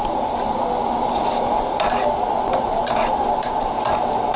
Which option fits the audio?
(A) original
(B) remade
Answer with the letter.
A